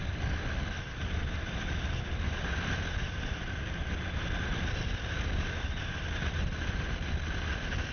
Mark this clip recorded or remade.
recorded